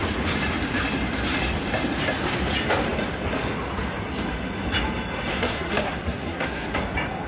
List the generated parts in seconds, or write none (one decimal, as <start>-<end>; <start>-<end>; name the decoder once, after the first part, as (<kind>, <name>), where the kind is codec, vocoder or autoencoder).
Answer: 5.3-6.8 (codec, SNAC)